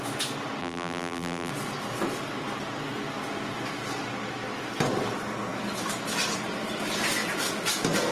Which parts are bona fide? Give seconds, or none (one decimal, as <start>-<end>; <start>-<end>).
0.0-0.6; 1.5-8.1